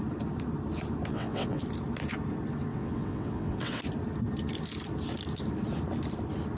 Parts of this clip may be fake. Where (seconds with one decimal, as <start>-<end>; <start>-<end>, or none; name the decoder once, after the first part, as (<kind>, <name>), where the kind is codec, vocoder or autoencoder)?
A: 1.1-1.6 (vocoder, WaveNeXt); 2.7-3.8